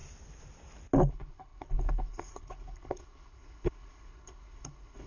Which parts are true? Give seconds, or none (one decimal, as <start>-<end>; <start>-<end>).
0.0-1.1